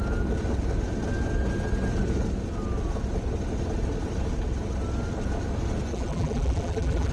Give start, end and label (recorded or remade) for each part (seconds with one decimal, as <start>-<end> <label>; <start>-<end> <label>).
0.0-5.9 recorded; 5.9-7.1 remade